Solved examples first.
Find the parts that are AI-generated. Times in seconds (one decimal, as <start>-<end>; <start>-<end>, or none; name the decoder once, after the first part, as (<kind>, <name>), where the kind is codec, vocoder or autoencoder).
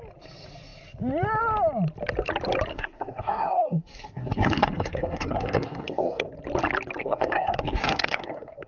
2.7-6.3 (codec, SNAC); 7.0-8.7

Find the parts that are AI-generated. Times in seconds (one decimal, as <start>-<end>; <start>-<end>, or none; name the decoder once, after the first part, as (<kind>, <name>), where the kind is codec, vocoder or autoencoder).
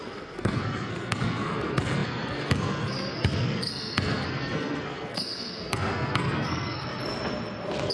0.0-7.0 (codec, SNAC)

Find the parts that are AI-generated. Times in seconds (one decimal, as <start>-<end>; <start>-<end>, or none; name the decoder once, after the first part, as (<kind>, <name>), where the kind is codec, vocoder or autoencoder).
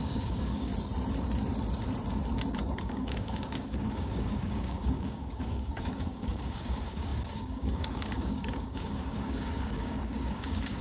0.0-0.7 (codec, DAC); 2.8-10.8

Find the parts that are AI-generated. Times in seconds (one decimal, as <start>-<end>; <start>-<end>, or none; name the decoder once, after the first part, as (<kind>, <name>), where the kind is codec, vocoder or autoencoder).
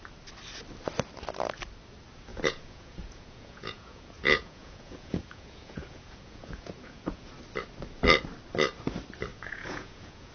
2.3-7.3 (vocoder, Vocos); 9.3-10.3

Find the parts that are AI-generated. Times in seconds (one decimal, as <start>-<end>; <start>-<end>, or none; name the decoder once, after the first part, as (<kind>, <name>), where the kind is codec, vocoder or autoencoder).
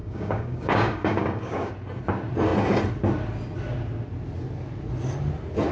0.0-1.7 (codec, DAC)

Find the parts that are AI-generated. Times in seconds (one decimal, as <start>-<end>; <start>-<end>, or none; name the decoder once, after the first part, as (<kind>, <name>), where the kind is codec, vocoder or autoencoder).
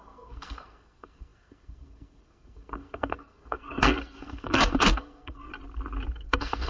0.0-5.5 (codec, SNAC); 6.1-6.7